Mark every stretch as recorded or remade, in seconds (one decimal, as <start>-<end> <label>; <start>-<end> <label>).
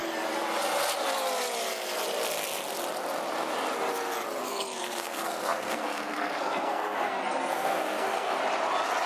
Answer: 0.0-4.4 recorded; 4.4-8.4 remade; 8.4-9.1 recorded